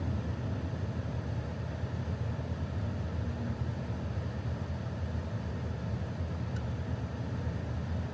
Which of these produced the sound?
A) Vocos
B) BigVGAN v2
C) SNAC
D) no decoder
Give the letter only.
D